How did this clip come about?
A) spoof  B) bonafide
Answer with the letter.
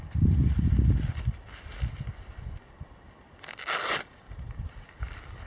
B